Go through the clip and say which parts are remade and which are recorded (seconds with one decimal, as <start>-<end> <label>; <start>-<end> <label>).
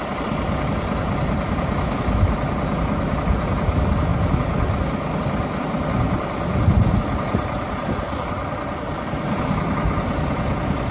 0.0-10.9 recorded